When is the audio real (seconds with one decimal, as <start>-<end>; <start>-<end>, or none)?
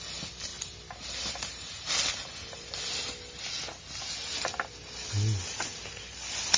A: 0.0-6.6